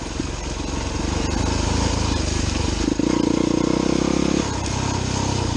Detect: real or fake real